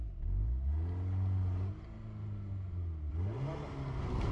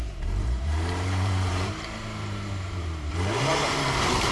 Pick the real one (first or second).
first